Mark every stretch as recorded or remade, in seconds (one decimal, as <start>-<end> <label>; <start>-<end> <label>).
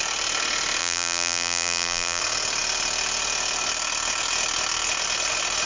0.0-0.8 recorded; 0.8-2.2 remade; 2.2-5.7 recorded